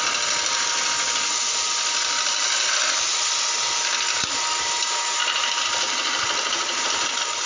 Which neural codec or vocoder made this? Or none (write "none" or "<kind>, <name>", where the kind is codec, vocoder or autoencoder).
none